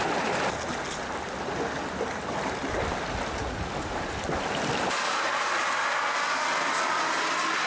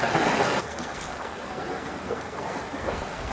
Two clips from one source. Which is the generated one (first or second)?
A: second